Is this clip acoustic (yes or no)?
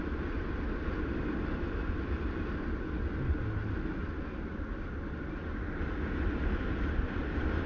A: yes